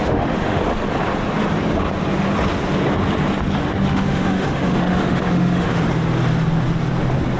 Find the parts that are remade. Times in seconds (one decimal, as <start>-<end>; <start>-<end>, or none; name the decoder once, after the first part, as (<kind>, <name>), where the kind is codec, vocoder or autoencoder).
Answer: 0.0-0.6 (autoencoder, DAC-VAE); 3.7-5.8